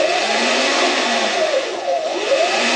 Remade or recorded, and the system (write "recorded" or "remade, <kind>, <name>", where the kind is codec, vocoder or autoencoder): remade, vocoder, Vocos